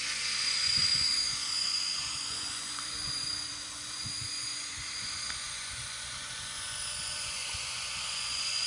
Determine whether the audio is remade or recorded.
remade